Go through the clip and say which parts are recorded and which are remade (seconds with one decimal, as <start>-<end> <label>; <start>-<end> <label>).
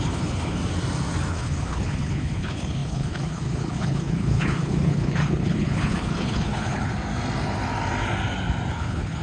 0.0-0.6 remade; 0.6-1.3 recorded; 1.3-6.9 remade; 6.9-8.7 recorded; 8.7-9.2 remade